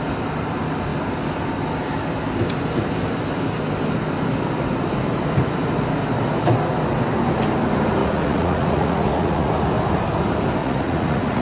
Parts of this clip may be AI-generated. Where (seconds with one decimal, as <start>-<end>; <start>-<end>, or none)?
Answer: 8.0-9.5; 10.6-11.4